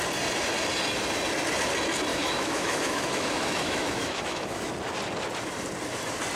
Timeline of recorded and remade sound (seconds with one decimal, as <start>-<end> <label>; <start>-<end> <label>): 0.0-2.1 recorded; 2.1-4.7 remade; 4.7-6.4 recorded